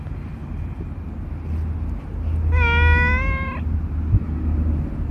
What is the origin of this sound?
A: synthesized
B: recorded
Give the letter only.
B